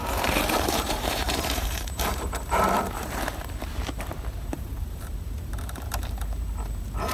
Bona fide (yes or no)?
no